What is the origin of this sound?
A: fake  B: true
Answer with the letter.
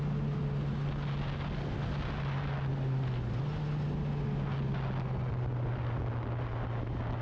B